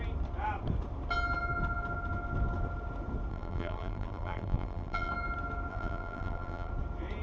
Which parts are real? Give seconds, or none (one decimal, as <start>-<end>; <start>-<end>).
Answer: 0.0-3.3; 5.1-5.7; 6.7-7.2